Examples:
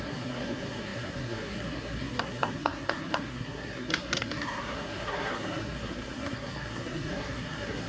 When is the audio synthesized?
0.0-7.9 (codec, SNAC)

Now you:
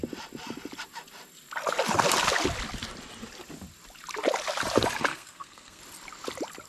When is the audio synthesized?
5.1-5.8 (codec, SNAC)